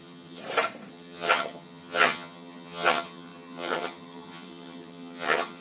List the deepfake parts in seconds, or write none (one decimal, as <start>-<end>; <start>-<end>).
0.0-0.4; 0.9-5.6